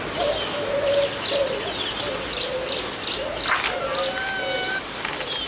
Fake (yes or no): no